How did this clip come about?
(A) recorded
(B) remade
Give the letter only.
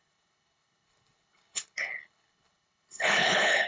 B